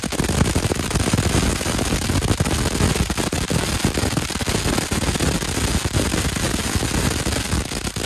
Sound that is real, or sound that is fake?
real